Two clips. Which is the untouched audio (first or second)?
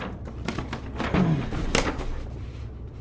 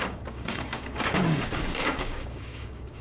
first